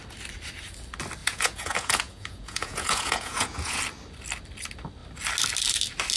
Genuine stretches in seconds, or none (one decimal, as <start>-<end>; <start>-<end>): 0.0-1.2; 3.8-6.2